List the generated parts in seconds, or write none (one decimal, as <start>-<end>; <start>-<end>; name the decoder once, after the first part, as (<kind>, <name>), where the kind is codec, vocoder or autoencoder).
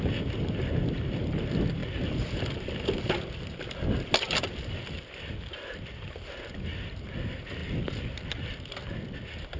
none